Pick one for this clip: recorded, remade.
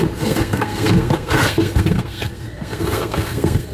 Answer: remade